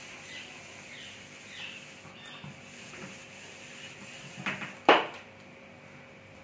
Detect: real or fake fake